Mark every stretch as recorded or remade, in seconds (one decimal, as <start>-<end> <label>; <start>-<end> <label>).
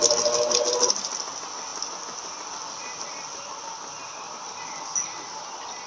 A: 0.0-5.9 recorded